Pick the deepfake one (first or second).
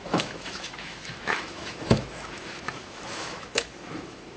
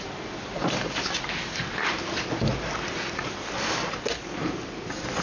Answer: first